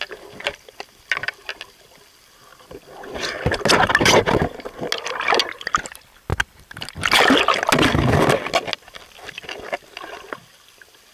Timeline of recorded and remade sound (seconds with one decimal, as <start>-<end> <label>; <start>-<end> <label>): 0.0-11.1 recorded